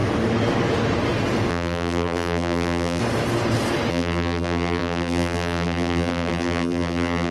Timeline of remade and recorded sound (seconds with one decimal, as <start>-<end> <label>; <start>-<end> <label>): 0.0-1.5 recorded; 1.5-3.0 remade; 3.0-3.9 recorded; 3.9-7.3 remade